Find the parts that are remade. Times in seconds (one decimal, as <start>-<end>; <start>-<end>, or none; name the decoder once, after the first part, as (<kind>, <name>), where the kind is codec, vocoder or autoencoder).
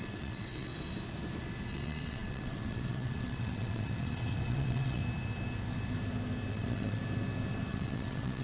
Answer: 0.0-0.7 (vocoder, WaveNeXt); 1.7-5.0; 6.5-7.0; 7.7-8.4